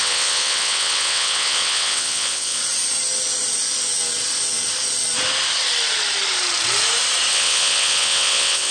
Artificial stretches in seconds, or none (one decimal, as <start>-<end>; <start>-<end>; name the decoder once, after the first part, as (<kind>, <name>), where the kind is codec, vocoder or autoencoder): 0.0-2.6 (vocoder, WaveNeXt); 7.3-8.7